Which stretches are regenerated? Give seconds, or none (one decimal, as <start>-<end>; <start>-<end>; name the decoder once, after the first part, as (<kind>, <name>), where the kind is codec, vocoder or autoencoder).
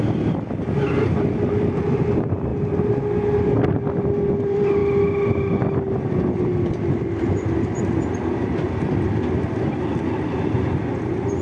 0.0-2.5 (vocoder, BigVGAN v2); 3.8-4.8; 5.7-11.4